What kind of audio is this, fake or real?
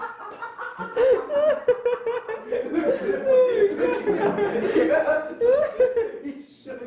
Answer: real